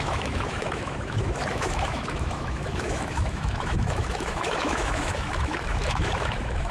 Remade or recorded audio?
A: remade